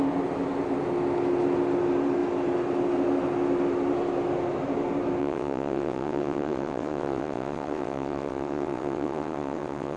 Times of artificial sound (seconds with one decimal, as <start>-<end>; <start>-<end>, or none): 5.2-10.0